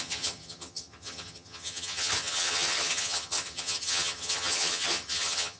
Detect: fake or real fake